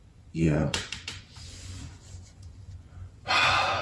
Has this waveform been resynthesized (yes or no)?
yes